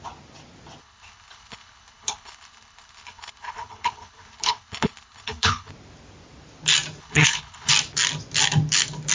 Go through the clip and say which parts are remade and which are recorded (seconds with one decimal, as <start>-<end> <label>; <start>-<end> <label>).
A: 0.0-0.8 recorded; 0.8-5.7 remade; 5.7-7.0 recorded; 7.0-7.7 remade; 7.7-9.1 recorded